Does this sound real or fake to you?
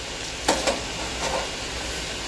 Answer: real